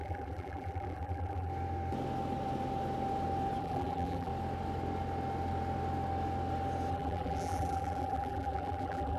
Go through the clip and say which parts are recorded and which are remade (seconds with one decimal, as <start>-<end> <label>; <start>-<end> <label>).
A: 0.0-1.5 remade; 1.5-3.6 recorded; 3.6-4.3 remade; 4.3-6.9 recorded; 6.9-9.2 remade